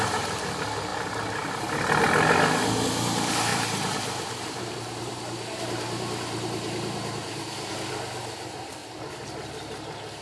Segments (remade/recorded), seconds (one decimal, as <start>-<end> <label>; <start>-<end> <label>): 0.0-3.5 recorded; 3.5-7.7 remade; 7.7-10.2 recorded